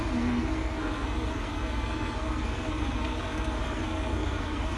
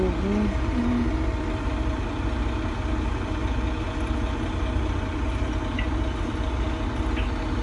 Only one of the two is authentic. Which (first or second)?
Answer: second